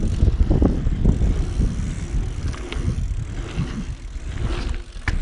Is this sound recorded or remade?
recorded